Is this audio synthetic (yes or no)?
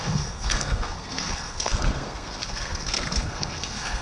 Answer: yes